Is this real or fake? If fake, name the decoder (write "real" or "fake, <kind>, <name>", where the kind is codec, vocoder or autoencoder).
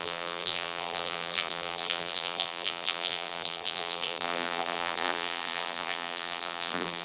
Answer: fake, vocoder, BigVGAN v2